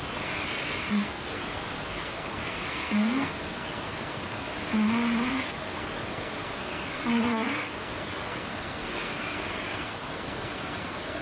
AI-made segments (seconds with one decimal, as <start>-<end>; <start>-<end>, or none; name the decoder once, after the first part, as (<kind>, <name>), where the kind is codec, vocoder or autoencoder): 0.0-4.5 (codec, SNAC); 5.3-11.2